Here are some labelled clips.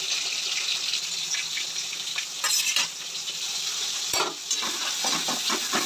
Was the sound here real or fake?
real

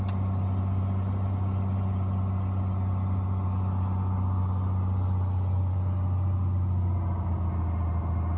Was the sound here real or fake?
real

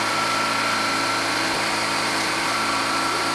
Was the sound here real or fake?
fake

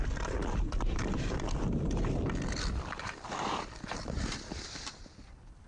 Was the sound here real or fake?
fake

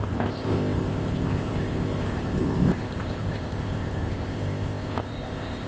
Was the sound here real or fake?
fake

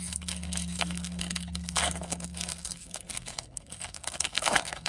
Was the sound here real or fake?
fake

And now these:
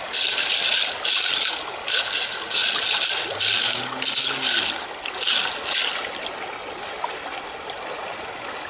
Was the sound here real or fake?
real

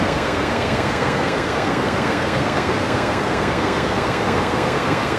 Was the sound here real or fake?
fake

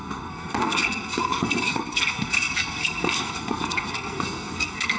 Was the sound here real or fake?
fake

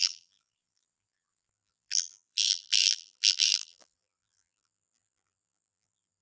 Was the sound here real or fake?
fake